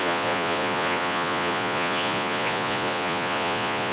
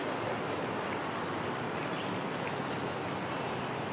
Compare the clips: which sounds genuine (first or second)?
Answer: second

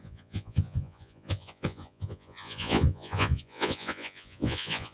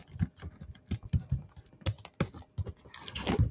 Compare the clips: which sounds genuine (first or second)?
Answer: second